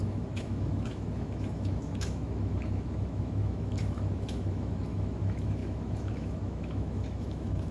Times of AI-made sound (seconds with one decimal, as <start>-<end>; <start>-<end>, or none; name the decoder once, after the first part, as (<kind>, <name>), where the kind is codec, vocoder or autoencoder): 0.0-7.7 (autoencoder, DAC-VAE)